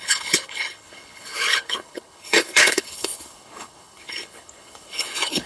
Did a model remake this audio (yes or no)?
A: yes